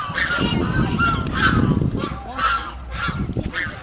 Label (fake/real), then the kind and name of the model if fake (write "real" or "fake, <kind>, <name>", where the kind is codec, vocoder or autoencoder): real